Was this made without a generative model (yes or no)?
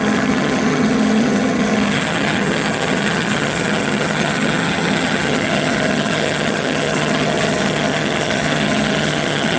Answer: no